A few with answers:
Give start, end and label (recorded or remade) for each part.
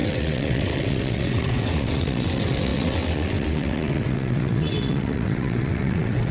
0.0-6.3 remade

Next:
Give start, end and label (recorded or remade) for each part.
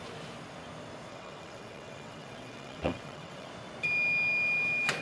0.0-1.1 recorded; 1.1-3.5 remade; 3.5-5.0 recorded